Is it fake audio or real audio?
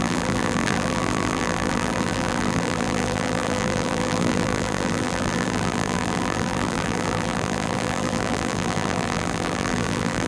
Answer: fake